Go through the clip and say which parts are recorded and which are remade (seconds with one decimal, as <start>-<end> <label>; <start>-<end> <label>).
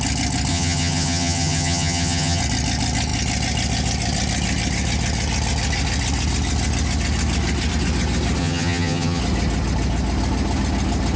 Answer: 0.0-0.5 recorded; 0.5-2.4 remade; 2.4-8.4 recorded; 8.4-9.2 remade; 9.2-11.2 recorded